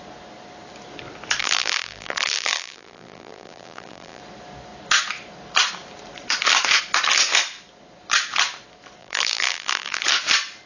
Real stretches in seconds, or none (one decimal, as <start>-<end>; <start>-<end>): 0.0-1.4; 4.2-9.0; 10.0-10.7